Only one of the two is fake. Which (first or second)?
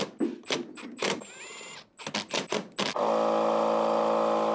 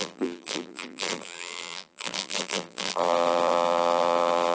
second